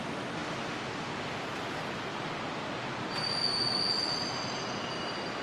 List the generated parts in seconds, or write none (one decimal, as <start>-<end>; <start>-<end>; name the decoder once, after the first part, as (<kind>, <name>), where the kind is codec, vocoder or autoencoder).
none

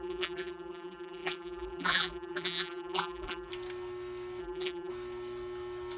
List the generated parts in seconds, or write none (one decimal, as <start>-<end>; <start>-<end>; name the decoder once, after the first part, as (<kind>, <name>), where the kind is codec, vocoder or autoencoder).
0.0-3.5 (vocoder, BigVGAN v2); 4.4-4.9

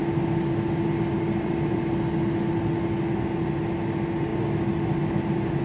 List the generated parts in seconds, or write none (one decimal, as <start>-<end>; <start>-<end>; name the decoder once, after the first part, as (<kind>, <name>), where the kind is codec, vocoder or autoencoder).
0.0-3.0 (vocoder, BigVGAN v2)

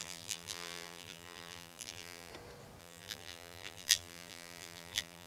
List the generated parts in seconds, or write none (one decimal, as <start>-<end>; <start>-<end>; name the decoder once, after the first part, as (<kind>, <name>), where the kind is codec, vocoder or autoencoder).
0.0-2.3 (vocoder, BigVGAN v2); 2.8-5.3

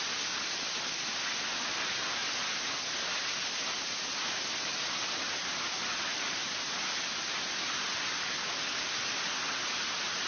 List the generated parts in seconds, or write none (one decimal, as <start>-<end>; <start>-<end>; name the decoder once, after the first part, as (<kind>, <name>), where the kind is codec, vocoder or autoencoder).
none